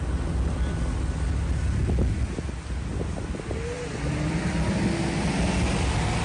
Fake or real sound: real